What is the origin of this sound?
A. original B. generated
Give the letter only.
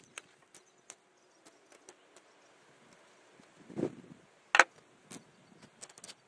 A